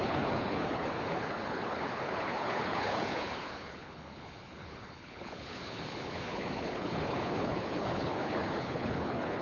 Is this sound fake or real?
fake